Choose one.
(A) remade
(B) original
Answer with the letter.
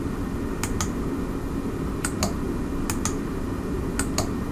B